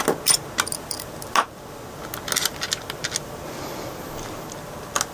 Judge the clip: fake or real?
real